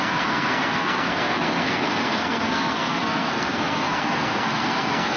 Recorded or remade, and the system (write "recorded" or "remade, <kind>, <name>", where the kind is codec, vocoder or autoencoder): remade, codec, SNAC